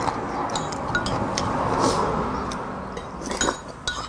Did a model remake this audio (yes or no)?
no